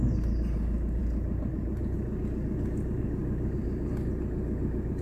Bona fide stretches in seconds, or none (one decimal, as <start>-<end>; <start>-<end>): 0.0-5.0